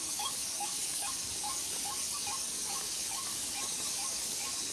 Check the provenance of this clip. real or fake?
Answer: fake